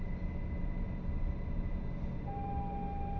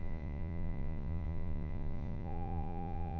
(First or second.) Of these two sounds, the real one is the first